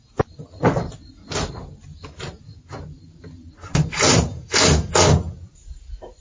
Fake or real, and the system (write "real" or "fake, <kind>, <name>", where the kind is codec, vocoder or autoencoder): real